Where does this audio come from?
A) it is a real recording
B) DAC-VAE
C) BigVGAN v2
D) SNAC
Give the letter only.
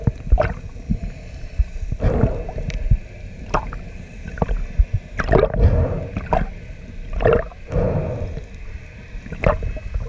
A